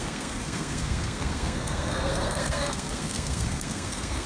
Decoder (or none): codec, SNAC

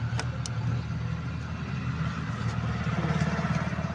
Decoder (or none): none